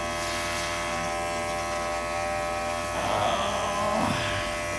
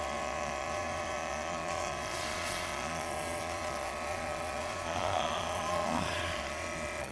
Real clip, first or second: first